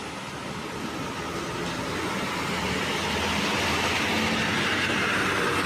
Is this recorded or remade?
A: recorded